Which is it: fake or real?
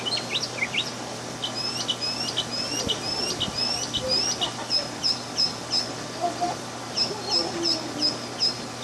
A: real